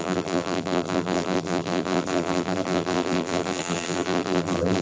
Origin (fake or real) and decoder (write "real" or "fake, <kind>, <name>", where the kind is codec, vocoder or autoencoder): fake, vocoder, BigVGAN v2